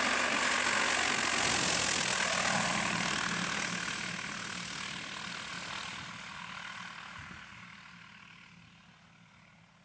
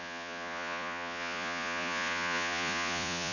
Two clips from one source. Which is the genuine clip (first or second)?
first